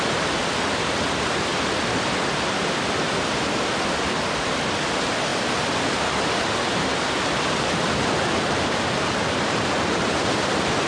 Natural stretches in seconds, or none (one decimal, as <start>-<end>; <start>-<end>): 0.0-10.9